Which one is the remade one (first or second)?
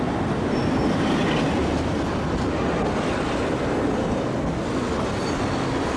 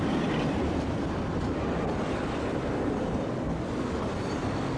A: second